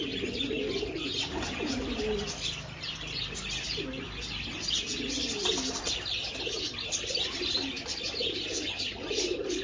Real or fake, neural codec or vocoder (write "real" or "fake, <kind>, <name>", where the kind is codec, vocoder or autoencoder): real